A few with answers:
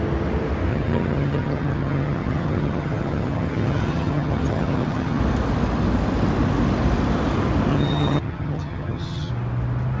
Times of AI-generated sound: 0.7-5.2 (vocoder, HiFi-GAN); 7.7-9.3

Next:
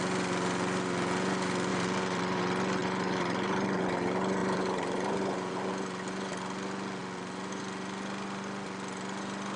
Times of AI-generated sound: 1.7-2.4 (vocoder, BigVGAN v2); 2.8-3.8; 4.4-5.7

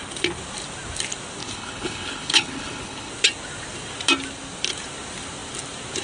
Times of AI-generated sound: 1.4-3.1 (codec, HILCodec)

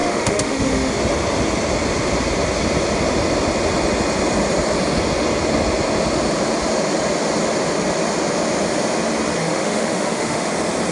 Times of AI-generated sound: 0.0-0.9 (autoencoder, DAC-VAE); 9.4-10.5

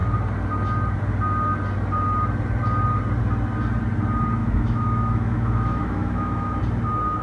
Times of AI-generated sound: 4.4-6.6 (autoencoder, DAC-VAE)

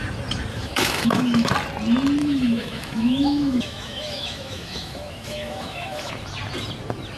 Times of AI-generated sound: 0.5-1.5 (autoencoder, DAC-VAE); 2.2-6.1

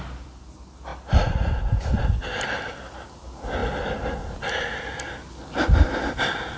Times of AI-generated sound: 0.9-2.7 (vocoder, BigVGAN v2); 3.6-5.0

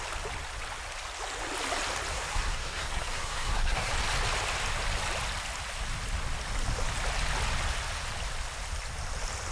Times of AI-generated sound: 2.1-3.9 (codec, SNAC)